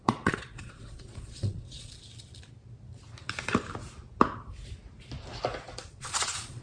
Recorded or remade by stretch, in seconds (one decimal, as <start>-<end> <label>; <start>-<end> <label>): 0.0-1.9 remade; 1.9-5.9 recorded; 5.9-6.6 remade